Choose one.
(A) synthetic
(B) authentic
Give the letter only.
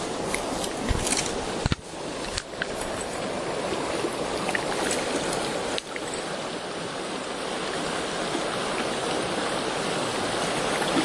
B